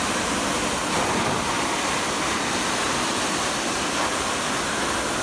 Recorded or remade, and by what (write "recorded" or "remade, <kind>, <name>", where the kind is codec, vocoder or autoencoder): recorded